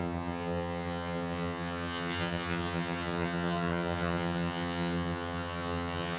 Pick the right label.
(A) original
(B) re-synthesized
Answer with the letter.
B